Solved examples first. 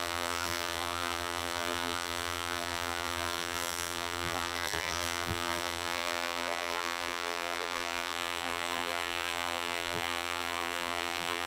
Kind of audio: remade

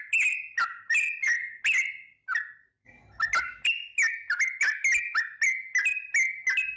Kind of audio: recorded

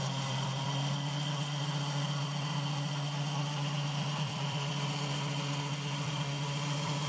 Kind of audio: remade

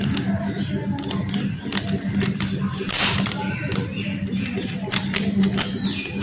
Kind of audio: recorded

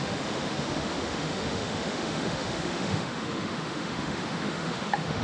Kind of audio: remade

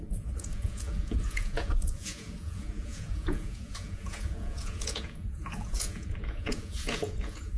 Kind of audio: remade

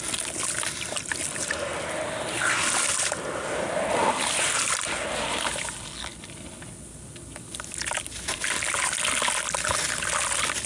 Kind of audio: recorded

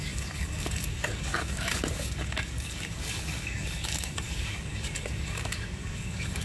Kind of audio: remade